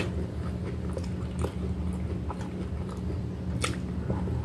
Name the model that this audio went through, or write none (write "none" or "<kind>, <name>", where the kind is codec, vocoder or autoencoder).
none